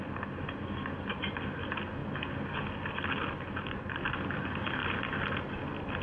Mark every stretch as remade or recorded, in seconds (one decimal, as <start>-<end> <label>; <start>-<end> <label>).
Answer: 0.0-6.0 recorded